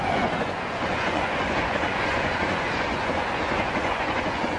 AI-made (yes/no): yes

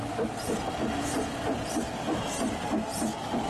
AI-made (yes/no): no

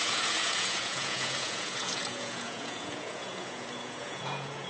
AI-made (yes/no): yes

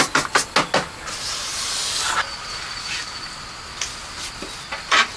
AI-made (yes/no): no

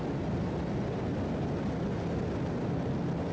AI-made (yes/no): no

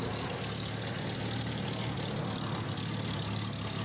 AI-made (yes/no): no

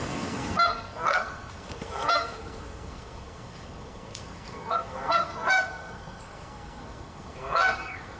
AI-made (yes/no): yes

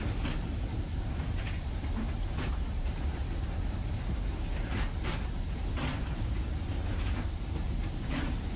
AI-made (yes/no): yes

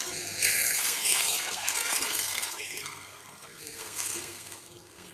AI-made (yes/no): yes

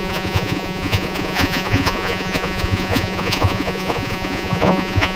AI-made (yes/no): yes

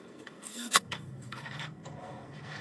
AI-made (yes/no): yes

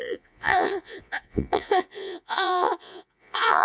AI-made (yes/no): yes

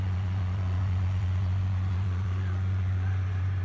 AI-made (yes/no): yes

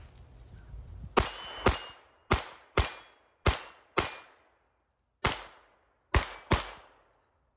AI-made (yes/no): no